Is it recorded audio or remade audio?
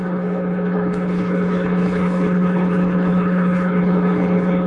remade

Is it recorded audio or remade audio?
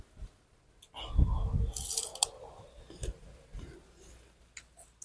recorded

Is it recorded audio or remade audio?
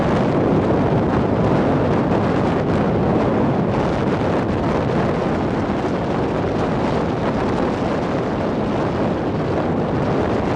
recorded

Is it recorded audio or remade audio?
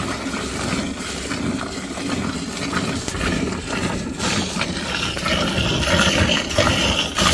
recorded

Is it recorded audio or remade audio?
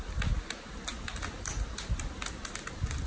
recorded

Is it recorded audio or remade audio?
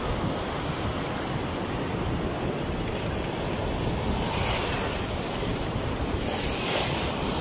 recorded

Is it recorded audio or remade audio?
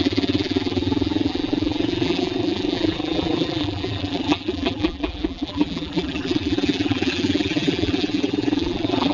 remade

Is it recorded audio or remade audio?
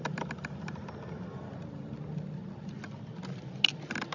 recorded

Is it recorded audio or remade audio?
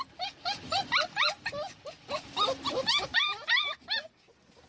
recorded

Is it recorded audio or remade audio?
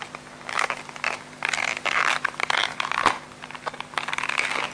recorded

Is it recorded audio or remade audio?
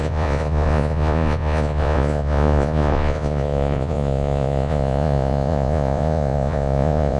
remade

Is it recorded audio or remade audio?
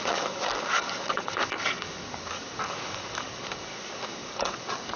remade